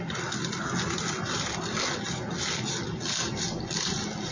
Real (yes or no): yes